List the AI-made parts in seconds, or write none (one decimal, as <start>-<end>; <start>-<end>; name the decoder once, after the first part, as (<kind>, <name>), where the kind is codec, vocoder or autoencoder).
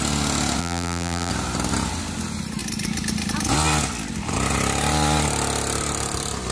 0.6-1.3 (vocoder, BigVGAN v2)